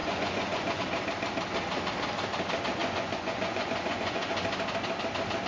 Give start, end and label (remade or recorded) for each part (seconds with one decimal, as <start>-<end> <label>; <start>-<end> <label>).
0.0-0.8 remade; 0.8-2.8 recorded; 2.8-4.3 remade; 4.3-5.5 recorded

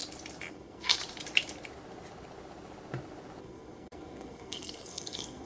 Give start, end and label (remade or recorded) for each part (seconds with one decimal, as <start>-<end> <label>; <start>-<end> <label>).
0.0-0.5 recorded; 0.5-1.0 remade; 1.0-3.4 recorded; 3.4-5.5 remade